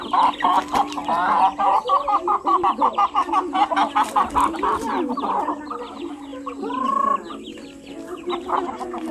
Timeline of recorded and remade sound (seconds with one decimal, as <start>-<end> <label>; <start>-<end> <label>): 0.0-9.1 recorded